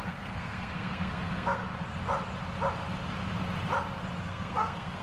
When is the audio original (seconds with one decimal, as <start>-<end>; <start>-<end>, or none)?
1.6-4.2